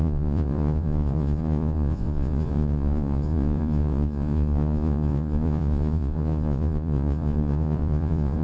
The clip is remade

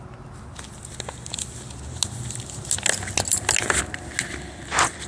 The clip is recorded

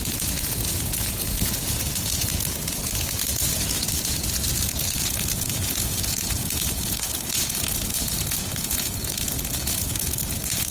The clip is remade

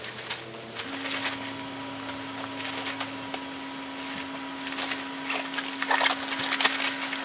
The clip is recorded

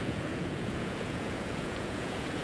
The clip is remade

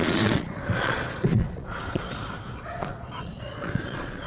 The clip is remade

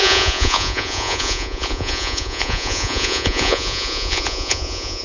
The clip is remade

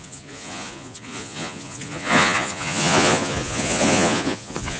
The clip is remade